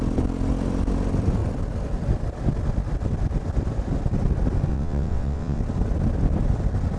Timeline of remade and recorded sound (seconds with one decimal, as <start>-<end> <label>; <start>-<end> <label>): 0.0-4.7 recorded; 4.7-5.6 remade; 5.6-7.0 recorded